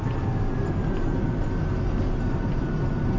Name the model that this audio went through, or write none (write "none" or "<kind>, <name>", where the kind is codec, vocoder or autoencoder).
none